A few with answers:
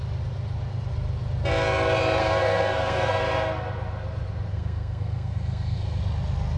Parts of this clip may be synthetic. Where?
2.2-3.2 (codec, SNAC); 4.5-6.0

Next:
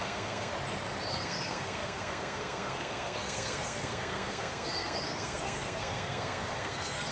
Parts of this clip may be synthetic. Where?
0.0-0.5 (codec, SNAC); 1.1-7.1

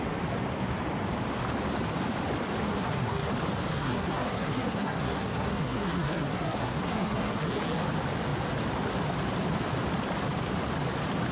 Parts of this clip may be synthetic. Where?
2.7-3.3 (codec, SNAC); 3.7-7.5

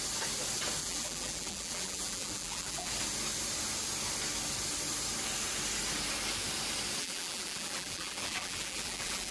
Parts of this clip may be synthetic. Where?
0.8-2.9 (vocoder, BigVGAN v2); 7.0-9.3

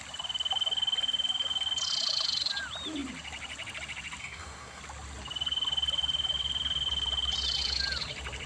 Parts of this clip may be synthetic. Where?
4.2-4.8 (codec, SNAC)